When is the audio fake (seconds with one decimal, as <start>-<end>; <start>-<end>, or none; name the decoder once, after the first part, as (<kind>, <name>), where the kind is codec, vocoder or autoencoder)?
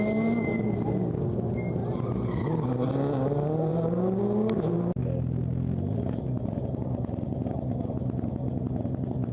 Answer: none